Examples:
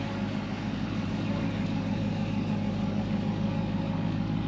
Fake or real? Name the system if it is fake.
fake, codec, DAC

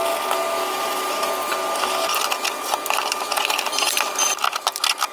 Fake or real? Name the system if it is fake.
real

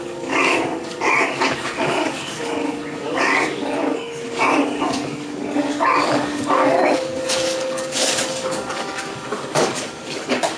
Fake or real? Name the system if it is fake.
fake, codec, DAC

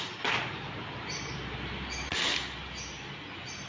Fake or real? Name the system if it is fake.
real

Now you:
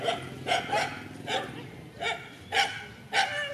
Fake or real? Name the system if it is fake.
real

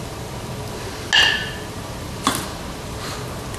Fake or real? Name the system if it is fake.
real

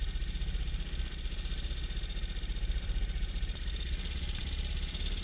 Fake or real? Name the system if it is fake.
real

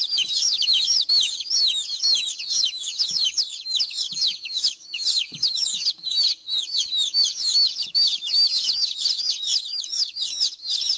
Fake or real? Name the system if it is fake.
fake, codec, DAC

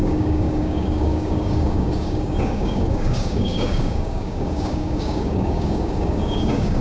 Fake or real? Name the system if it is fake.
fake, codec, DAC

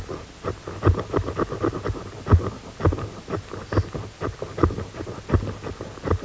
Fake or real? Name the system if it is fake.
real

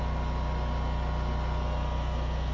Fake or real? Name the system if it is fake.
real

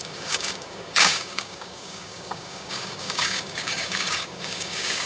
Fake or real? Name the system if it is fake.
fake, codec, DAC